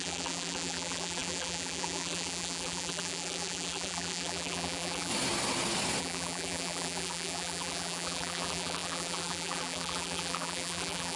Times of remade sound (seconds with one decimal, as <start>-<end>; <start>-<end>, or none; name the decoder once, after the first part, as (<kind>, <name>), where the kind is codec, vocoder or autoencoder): 0.0-5.1 (vocoder, BigVGAN v2); 6.0-11.2